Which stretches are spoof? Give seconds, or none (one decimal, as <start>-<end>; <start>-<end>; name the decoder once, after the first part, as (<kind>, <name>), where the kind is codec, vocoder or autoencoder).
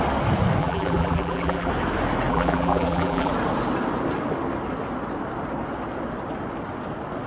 0.6-1.7 (vocoder, BigVGAN v2); 2.3-3.3